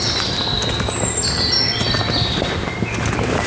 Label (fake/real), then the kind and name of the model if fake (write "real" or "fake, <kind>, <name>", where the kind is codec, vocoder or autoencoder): real